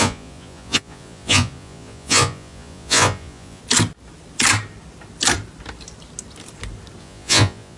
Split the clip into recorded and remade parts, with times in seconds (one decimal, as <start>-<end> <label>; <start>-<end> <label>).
0.0-3.6 remade; 3.6-7.0 recorded; 7.0-7.8 remade

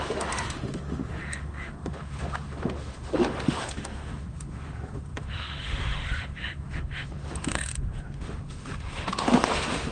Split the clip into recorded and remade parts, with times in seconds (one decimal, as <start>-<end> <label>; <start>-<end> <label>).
0.0-9.9 remade

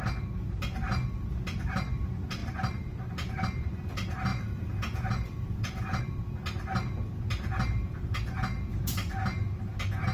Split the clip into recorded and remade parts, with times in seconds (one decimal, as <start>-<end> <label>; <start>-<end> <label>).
0.0-4.3 recorded; 4.3-6.0 remade; 6.0-10.1 recorded